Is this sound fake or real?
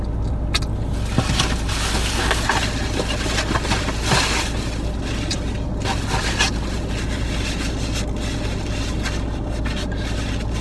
real